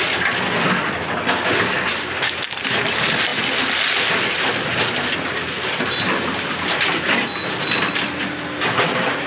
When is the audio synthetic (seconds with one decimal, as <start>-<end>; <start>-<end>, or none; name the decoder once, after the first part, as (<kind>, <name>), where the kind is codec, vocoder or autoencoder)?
none